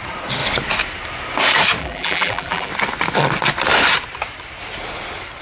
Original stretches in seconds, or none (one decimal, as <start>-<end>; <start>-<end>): 0.0-1.8; 2.7-5.4